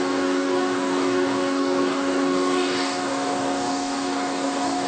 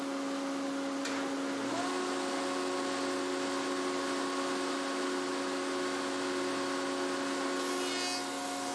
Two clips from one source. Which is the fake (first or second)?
first